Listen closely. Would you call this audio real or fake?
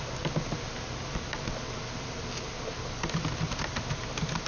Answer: real